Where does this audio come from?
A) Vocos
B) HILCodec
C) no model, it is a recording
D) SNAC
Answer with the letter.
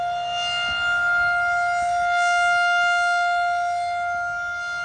C